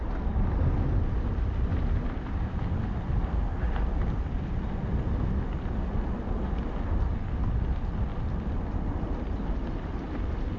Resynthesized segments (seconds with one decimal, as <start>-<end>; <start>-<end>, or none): 1.7-2.8; 3.4-4.9